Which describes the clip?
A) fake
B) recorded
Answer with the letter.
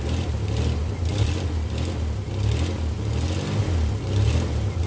B